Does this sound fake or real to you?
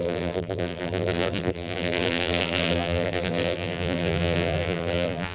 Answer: fake